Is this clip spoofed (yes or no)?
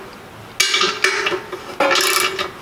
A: no